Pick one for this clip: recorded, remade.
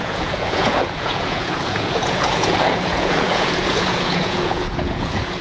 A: remade